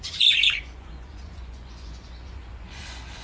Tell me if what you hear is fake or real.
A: fake